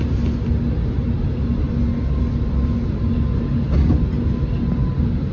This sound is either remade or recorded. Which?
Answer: recorded